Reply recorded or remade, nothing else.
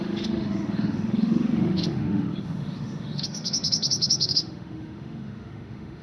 remade